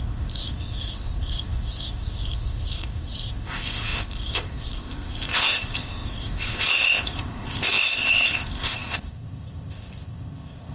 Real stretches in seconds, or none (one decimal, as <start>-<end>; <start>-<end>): none